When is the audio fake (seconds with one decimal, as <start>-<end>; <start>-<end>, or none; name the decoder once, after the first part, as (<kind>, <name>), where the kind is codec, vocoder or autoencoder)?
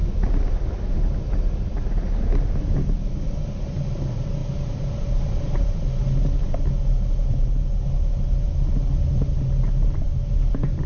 4.4-5.8 (vocoder, BigVGAN v2)